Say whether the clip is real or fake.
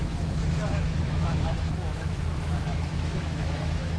fake